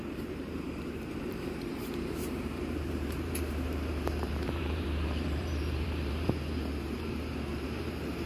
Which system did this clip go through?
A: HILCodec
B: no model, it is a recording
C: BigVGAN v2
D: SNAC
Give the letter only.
C